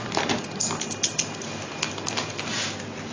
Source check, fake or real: real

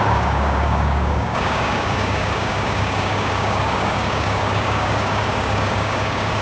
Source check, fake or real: fake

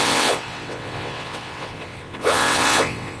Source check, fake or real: fake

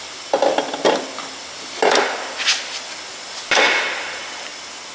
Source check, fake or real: real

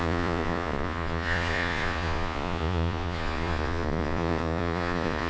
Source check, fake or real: fake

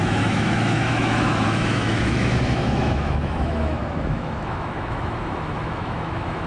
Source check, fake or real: fake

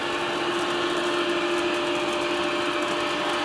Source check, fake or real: real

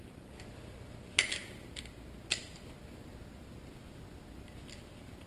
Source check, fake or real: real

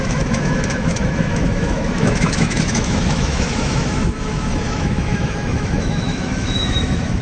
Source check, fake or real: fake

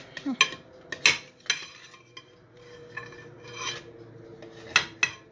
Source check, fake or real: real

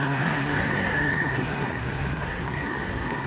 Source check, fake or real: fake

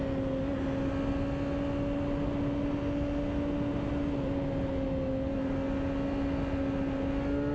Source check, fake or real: real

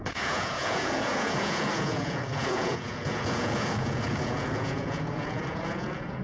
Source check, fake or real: fake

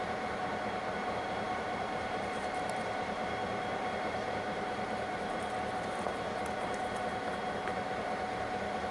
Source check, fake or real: fake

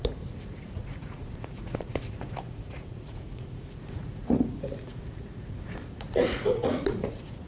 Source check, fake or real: fake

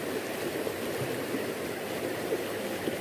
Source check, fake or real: real